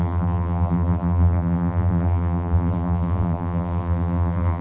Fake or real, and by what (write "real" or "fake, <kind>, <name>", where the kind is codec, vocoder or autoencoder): fake, vocoder, BigVGAN v2